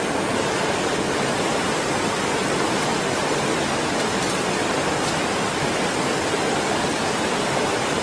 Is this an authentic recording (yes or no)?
yes